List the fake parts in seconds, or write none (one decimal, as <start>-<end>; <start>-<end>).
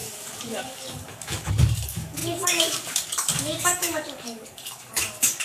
0.0-5.4